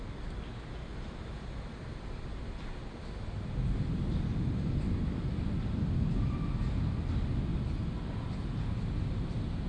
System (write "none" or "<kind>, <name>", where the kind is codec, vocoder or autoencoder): none